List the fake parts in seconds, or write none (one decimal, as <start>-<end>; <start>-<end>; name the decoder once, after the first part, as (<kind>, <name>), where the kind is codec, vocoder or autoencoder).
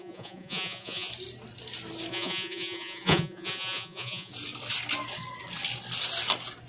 0.0-1.1 (vocoder, Vocos); 2.1-4.3